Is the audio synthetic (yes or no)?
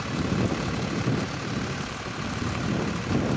no